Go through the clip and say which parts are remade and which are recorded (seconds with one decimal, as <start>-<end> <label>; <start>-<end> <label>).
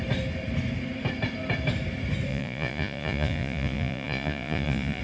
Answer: 0.0-2.3 recorded; 2.3-5.0 remade